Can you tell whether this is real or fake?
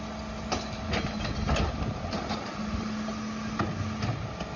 real